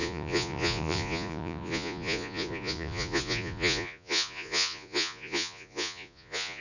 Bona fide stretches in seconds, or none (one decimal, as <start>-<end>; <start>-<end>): none